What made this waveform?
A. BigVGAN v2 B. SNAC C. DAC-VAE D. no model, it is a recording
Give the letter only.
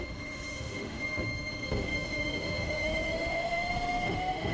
C